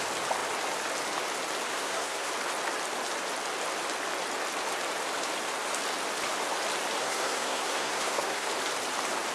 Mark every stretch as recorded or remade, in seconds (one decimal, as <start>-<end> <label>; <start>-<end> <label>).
0.0-1.7 recorded; 1.7-2.3 remade; 2.3-7.0 recorded; 7.0-8.5 remade; 8.5-9.3 recorded